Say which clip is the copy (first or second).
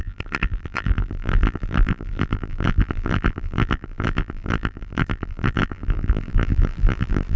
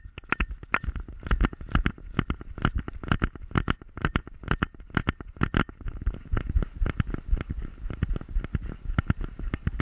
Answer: first